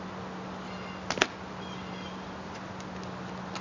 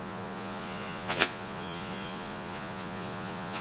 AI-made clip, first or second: second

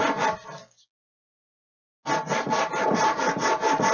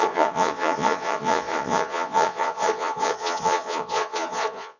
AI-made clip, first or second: second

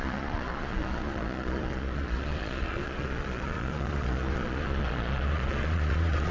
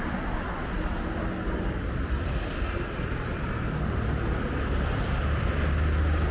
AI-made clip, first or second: first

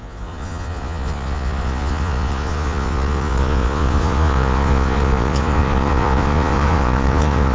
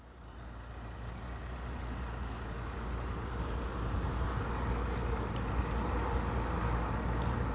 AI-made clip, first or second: first